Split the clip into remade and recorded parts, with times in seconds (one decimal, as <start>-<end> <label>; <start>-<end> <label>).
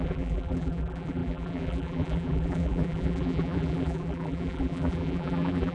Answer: 0.0-5.7 remade